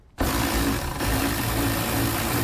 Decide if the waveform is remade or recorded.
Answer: remade